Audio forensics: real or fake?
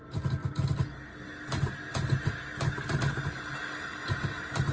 real